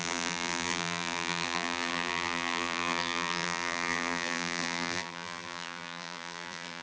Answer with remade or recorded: remade